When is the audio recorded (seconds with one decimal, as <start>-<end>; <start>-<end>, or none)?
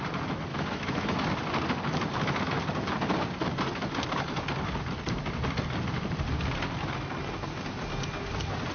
0.0-0.5; 1.3-8.7